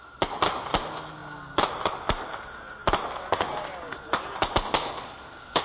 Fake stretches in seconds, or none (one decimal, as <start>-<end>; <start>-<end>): none